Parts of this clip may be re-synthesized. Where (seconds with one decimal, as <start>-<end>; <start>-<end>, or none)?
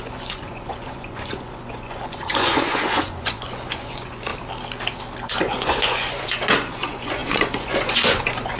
0.0-4.3; 5.3-8.6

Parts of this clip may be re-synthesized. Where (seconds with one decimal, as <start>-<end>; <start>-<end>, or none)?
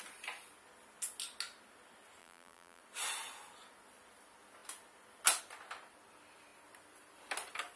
2.2-2.8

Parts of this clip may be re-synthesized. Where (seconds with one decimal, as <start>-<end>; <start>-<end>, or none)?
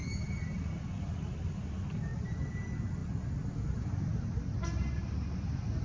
none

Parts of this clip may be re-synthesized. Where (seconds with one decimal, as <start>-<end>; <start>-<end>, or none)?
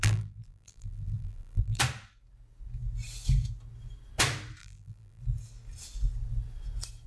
0.0-1.8; 4.6-5.2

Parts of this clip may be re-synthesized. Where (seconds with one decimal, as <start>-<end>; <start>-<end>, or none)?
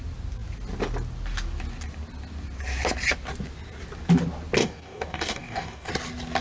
4.6-5.9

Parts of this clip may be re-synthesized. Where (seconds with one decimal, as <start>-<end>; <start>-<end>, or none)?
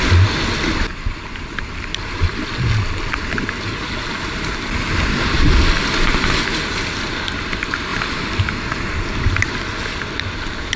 none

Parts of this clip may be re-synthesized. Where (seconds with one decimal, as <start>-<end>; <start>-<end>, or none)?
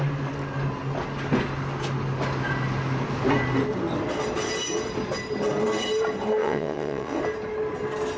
6.4-7.2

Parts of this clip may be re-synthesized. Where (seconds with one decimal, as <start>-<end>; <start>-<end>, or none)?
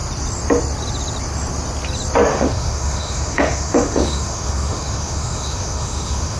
2.3-6.4